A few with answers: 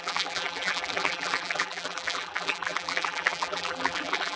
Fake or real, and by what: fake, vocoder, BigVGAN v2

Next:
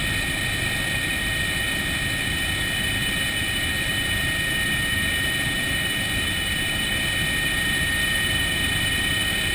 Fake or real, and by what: fake, vocoder, BigVGAN v2